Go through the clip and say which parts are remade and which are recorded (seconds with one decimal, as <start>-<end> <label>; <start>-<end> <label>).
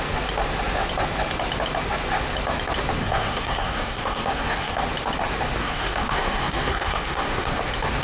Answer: 0.0-3.0 recorded; 3.0-4.8 remade; 4.8-5.6 recorded; 5.6-7.6 remade; 7.6-8.0 recorded